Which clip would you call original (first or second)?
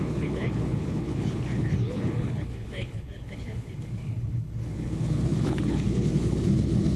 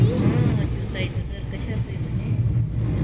second